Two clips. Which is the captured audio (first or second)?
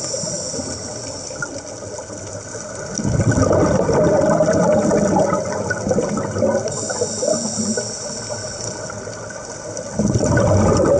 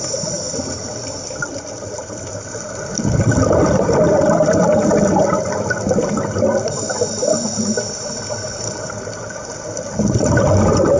first